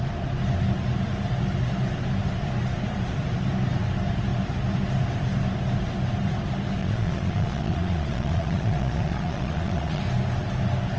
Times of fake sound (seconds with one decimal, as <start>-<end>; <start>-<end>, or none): 6.8-10.0